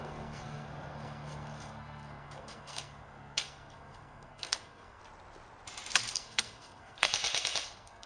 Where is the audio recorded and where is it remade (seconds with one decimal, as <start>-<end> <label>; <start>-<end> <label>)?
0.0-5.0 remade; 5.0-6.1 recorded; 6.1-8.1 remade